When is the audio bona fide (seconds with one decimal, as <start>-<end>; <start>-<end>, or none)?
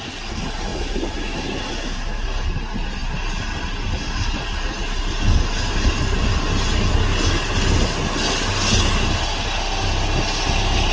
0.0-10.9